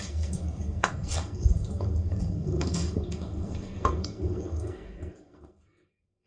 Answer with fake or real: fake